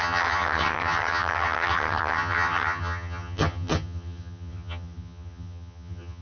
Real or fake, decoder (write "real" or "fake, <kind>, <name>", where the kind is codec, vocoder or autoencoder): fake, vocoder, HiFi-GAN